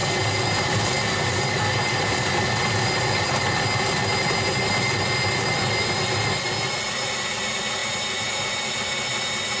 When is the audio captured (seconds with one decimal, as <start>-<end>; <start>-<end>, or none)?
0.0-9.6